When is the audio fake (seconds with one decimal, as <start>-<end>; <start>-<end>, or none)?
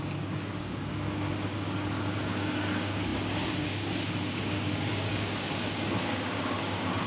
0.0-7.1